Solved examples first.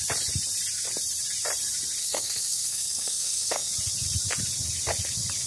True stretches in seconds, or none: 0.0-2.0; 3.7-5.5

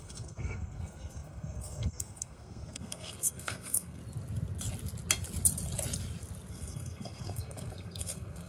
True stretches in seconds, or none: 4.0-6.5